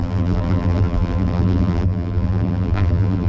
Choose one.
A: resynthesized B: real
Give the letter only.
A